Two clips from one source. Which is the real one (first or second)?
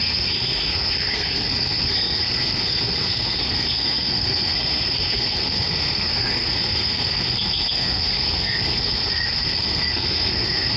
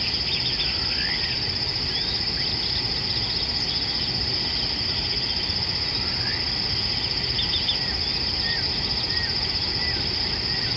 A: second